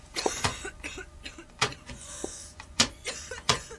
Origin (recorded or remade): remade